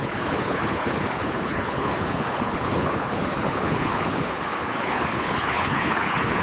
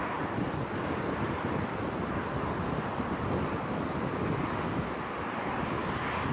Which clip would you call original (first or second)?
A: second